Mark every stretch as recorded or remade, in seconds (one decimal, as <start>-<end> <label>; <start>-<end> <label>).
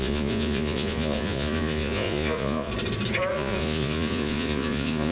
0.0-2.7 remade; 2.7-3.3 recorded; 3.3-5.1 remade